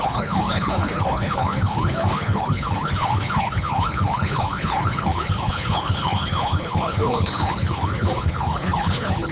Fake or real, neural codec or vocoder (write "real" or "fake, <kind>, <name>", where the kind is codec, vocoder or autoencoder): fake, codec, HILCodec